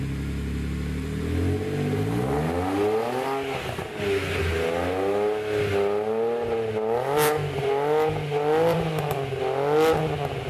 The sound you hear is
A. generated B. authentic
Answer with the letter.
B